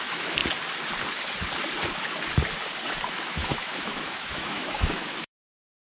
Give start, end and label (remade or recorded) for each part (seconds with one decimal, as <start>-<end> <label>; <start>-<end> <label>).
0.0-0.4 remade; 0.4-3.1 recorded; 3.1-5.9 remade